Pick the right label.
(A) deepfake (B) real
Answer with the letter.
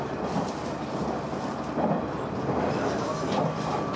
B